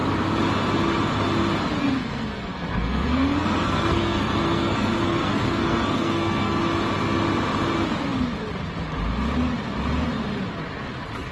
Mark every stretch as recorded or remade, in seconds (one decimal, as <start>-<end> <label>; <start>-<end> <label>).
0.0-1.8 recorded; 1.8-6.6 remade; 6.6-11.3 recorded